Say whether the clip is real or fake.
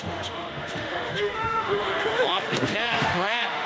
fake